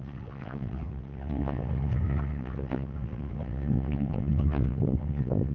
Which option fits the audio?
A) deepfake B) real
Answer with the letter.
A